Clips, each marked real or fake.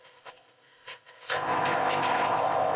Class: fake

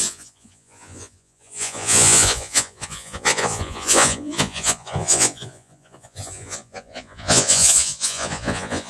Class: fake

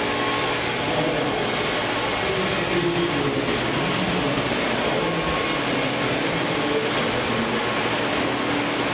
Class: real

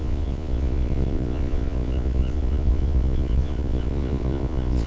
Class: fake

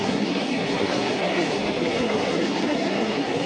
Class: fake